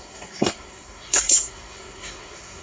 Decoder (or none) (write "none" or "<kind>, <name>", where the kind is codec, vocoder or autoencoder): codec, SNAC